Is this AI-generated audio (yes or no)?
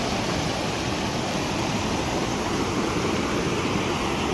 no